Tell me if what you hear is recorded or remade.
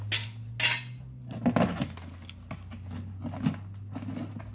recorded